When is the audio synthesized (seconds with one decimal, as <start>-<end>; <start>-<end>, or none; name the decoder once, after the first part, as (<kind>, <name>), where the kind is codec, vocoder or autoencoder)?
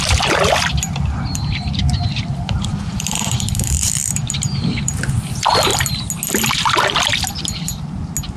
1.3-5.0 (vocoder, BigVGAN v2)